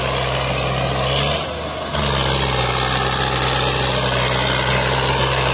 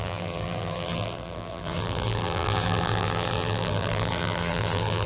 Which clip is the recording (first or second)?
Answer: first